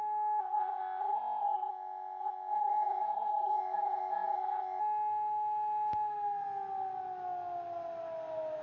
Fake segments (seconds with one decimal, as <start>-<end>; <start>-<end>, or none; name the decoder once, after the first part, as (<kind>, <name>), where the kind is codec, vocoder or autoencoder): 0.4-4.8 (codec, SNAC)

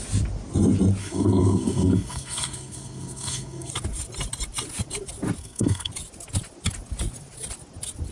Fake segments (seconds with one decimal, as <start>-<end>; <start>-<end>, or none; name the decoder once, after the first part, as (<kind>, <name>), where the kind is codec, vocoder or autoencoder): 1.0-3.7 (codec, SNAC); 5.4-5.9

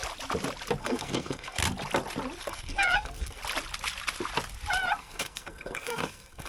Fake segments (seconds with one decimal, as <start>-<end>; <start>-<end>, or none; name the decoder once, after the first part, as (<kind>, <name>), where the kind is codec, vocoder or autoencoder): 0.8-1.6 (codec, SNAC); 2.4-3.4; 5.0-6.5